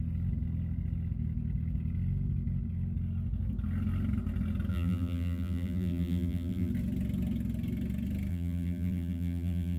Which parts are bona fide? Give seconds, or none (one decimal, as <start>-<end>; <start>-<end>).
0.0-4.7; 6.7-8.3

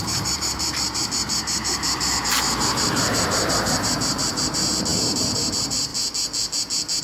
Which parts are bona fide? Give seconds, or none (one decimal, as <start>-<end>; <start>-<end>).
5.9-7.0